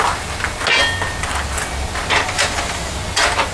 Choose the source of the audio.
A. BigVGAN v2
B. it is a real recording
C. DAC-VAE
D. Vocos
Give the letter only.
B